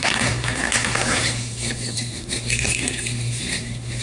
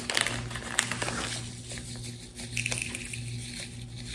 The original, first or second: second